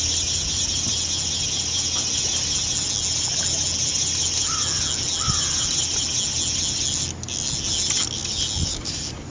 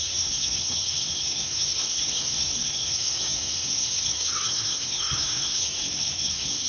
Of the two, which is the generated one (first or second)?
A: second